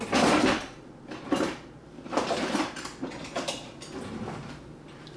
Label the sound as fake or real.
real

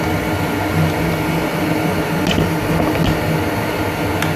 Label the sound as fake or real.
real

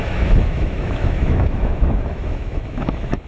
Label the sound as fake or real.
fake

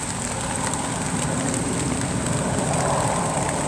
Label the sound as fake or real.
real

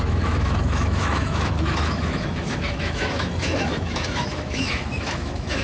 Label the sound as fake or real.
fake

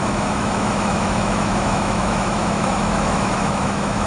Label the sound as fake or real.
fake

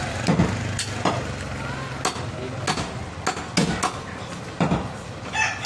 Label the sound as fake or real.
real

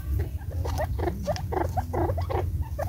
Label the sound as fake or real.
real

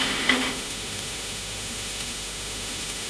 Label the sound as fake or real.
fake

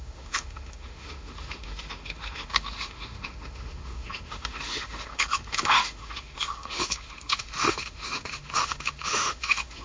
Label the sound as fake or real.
fake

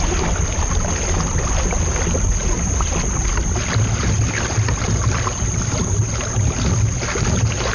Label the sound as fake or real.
real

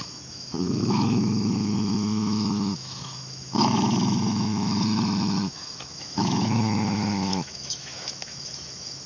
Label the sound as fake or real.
fake